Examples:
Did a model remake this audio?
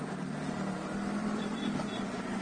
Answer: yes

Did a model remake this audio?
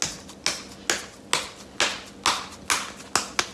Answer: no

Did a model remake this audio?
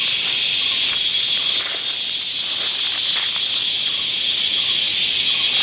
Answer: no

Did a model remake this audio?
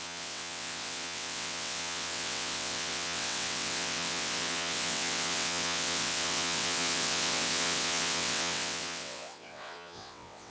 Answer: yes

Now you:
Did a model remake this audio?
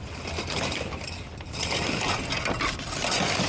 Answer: no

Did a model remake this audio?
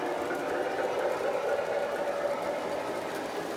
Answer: no